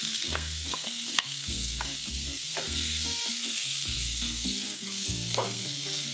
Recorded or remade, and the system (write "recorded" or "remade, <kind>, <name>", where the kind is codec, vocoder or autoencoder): remade, codec, SNAC